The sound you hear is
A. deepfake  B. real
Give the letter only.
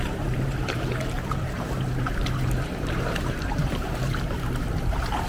A